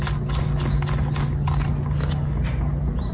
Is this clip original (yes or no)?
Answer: yes